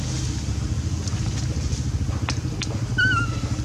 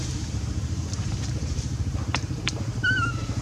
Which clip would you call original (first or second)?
first